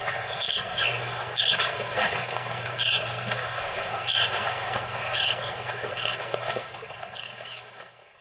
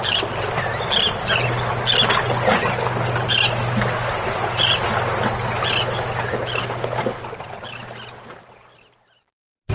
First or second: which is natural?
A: second